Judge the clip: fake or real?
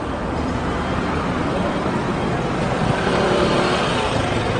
real